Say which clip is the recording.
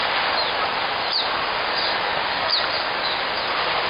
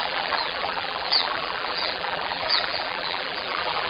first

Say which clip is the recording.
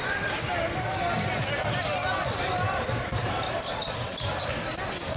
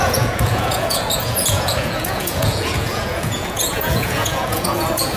first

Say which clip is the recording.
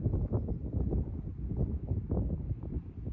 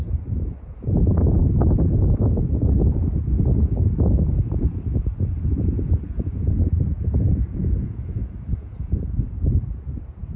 first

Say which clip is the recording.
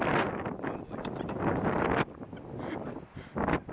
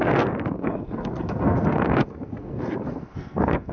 first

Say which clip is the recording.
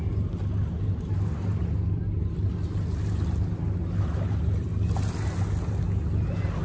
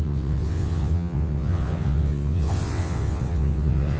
first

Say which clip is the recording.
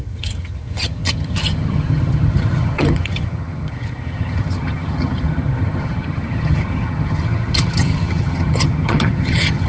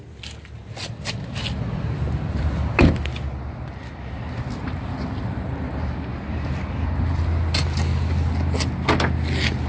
second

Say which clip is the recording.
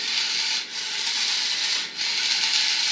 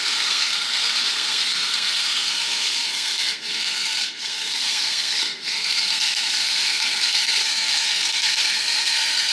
first